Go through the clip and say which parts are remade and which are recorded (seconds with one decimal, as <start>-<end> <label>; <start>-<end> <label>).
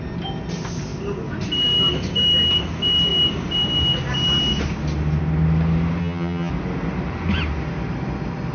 0.0-6.0 recorded; 6.0-6.5 remade; 6.5-8.5 recorded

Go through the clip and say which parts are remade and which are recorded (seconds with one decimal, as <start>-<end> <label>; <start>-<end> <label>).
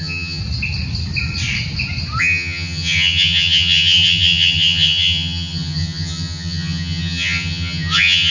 0.0-0.4 remade; 0.4-2.2 recorded; 2.2-8.3 remade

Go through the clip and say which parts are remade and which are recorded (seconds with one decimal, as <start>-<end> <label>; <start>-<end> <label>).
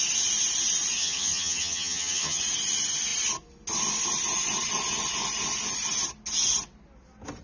0.0-1.0 recorded; 1.0-2.4 remade; 2.4-7.4 recorded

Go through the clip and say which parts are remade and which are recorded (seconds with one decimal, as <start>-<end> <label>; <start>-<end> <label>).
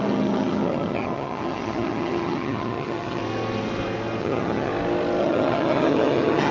0.0-3.2 remade; 3.2-4.2 recorded; 4.2-4.7 remade; 4.7-5.2 recorded; 5.2-6.5 remade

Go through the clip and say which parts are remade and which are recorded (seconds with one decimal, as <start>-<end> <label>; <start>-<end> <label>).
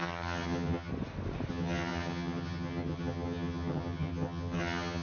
0.0-0.9 remade; 0.9-1.5 recorded; 1.5-5.0 remade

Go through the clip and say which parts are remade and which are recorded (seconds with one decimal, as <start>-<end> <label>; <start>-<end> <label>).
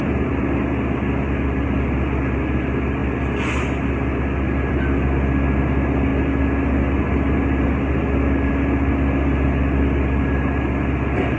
0.0-11.4 recorded